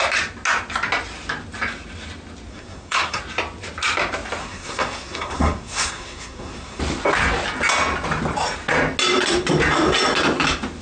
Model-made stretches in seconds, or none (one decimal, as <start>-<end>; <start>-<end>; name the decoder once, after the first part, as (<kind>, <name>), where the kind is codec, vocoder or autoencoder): 2.5-3.2 (codec, SNAC); 4.4-6.8